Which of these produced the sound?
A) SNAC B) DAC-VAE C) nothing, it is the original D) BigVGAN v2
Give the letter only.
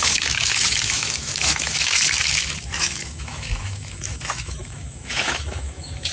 B